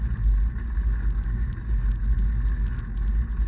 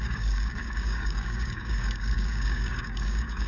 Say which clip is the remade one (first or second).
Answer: second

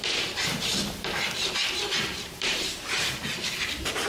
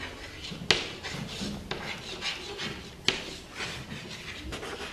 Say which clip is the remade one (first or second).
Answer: first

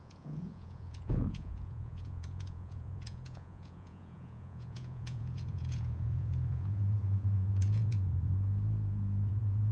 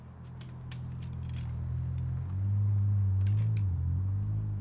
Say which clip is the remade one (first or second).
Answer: first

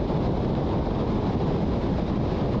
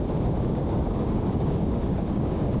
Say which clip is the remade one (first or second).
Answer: second